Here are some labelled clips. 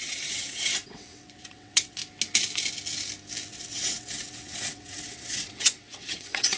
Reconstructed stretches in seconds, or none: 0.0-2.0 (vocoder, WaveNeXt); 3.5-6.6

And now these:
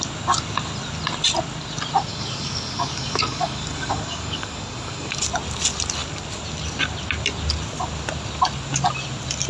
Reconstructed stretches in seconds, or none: 2.1-5.2 (codec, DAC)

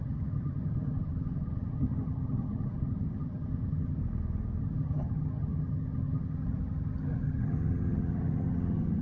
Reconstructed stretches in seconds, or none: 0.0-4.0 (vocoder, HiFi-GAN); 4.6-9.0

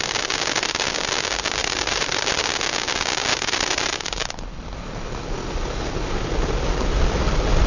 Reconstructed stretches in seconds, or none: 1.6-2.4 (vocoder, BigVGAN v2); 3.3-4.3